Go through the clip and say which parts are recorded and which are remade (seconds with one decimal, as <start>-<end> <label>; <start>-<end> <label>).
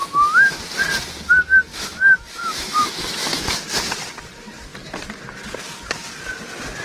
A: 0.0-0.6 remade; 0.6-1.7 recorded; 1.7-3.5 remade; 3.5-6.8 recorded